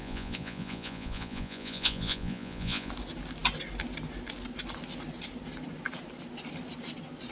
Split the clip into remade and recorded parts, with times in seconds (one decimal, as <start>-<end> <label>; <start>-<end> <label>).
0.0-2.9 remade; 2.9-7.3 recorded